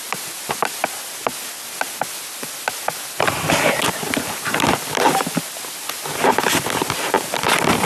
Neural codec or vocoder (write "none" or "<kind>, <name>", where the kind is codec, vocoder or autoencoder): none